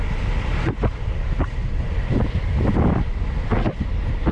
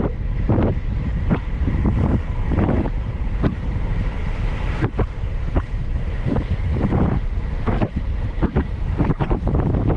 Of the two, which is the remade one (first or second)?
second